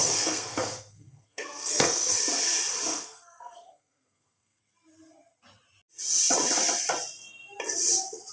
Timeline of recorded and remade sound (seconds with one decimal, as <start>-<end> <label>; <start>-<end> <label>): 0.0-2.2 remade; 2.2-2.9 recorded; 2.9-4.6 remade; 4.6-8.3 recorded